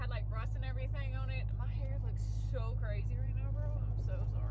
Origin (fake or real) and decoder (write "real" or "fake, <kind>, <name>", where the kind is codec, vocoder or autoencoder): real